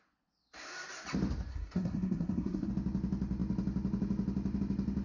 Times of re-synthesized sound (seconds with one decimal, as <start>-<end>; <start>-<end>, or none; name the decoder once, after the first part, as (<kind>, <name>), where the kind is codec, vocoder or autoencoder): 1.5-2.7 (codec, SNAC)